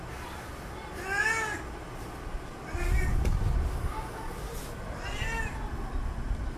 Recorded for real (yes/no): yes